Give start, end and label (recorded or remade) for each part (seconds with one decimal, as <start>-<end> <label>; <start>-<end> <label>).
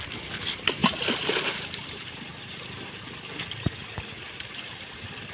0.0-0.8 recorded; 0.8-3.0 remade; 3.0-5.3 recorded